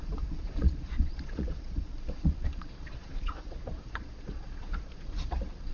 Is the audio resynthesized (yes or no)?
yes